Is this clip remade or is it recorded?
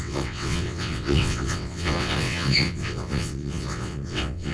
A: remade